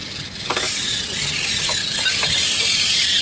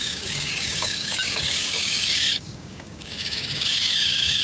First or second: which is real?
first